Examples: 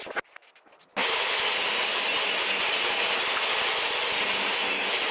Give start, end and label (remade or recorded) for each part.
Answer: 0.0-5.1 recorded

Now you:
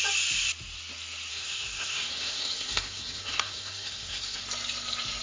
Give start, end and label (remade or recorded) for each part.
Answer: 0.0-1.3 recorded; 1.3-4.4 remade; 4.4-5.2 recorded